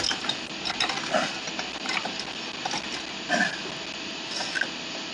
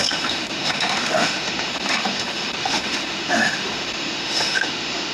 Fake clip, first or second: second